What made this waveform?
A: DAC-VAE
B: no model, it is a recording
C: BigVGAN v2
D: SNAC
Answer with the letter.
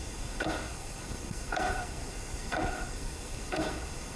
D